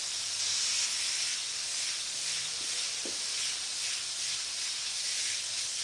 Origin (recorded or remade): recorded